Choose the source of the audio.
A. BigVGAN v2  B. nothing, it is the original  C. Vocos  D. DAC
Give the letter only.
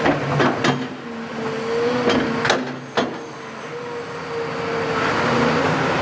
B